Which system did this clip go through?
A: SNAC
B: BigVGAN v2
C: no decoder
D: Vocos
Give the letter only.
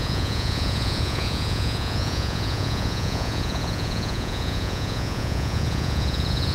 D